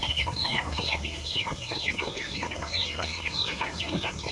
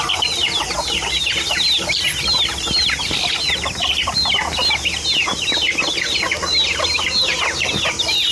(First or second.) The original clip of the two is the second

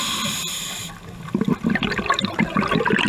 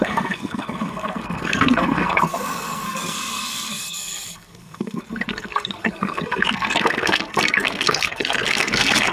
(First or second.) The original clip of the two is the first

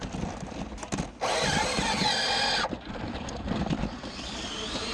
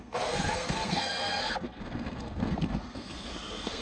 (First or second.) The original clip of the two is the first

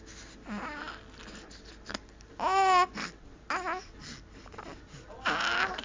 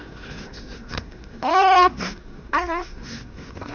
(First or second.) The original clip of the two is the first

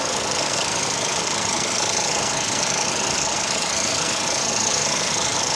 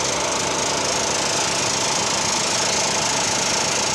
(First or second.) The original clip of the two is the second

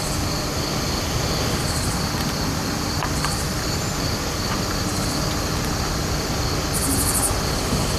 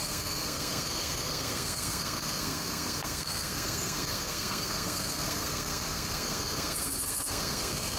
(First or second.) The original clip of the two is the first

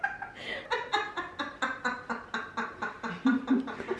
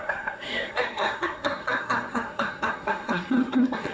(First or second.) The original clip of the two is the first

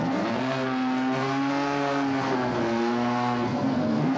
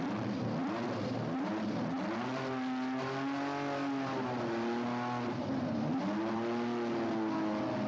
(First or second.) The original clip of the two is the second